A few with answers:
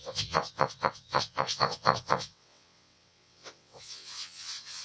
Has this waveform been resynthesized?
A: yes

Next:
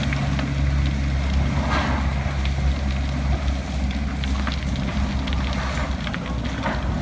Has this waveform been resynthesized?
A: no